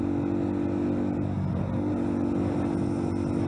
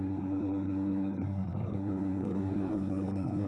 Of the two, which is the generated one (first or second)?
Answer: second